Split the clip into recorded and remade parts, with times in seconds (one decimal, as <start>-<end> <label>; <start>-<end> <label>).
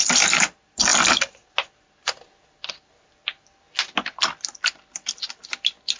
0.0-6.0 recorded